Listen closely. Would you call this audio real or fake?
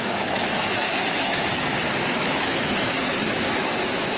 fake